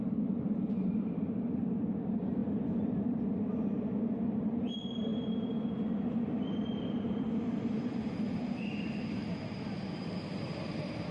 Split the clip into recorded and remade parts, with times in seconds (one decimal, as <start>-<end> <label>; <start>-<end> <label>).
0.0-11.1 remade